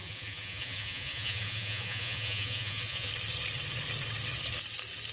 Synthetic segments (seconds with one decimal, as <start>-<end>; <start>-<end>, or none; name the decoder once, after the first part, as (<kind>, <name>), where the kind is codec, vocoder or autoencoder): 0.0-3.1 (vocoder, Vocos)